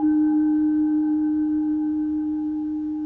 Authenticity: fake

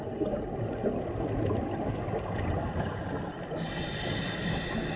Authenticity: real